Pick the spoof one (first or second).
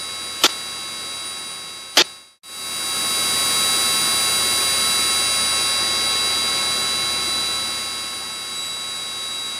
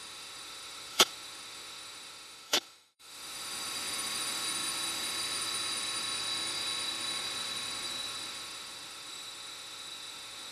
second